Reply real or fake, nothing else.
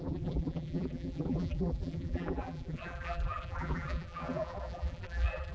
fake